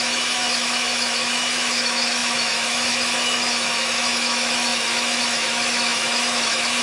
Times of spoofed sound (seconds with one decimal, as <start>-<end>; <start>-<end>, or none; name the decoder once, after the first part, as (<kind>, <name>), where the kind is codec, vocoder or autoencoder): 0.0-6.8 (autoencoder, DAC-VAE)